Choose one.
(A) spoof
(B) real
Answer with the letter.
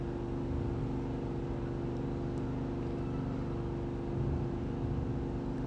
B